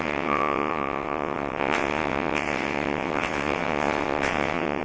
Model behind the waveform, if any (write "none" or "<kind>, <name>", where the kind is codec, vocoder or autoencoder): vocoder, WaveNeXt